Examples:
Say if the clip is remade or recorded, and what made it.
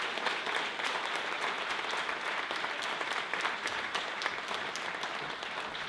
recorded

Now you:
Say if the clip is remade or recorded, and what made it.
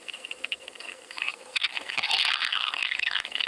remade, codec, SNAC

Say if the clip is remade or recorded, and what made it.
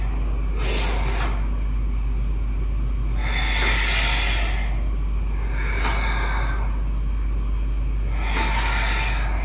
recorded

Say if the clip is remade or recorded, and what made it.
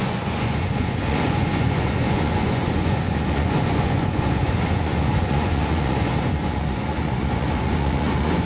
remade, vocoder, Vocos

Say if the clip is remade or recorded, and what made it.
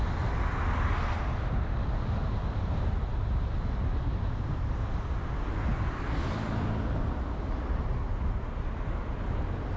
recorded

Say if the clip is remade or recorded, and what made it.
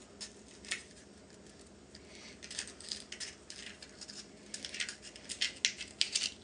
recorded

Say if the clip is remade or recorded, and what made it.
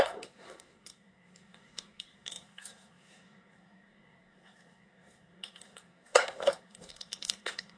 remade, codec, SNAC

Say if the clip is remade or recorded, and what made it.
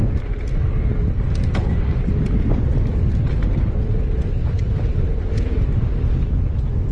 recorded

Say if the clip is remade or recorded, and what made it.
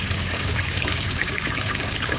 remade, codec, DAC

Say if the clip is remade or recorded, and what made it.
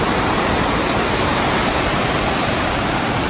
remade, vocoder, BigVGAN v2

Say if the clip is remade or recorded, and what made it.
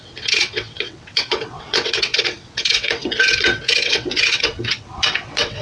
remade, vocoder, WaveNeXt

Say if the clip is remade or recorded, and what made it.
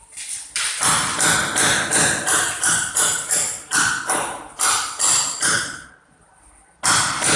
recorded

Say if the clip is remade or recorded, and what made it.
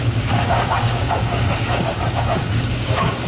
remade, codec, DAC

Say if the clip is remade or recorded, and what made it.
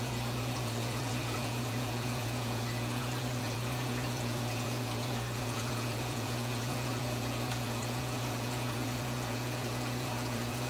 remade, vocoder, Vocos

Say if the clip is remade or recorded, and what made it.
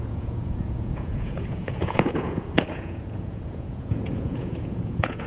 remade, vocoder, Vocos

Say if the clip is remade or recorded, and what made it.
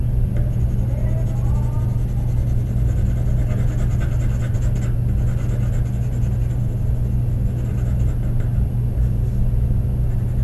recorded